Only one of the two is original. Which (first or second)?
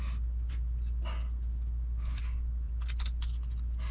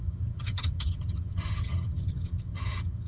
first